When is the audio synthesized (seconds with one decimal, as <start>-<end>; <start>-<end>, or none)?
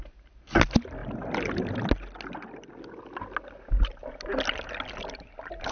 none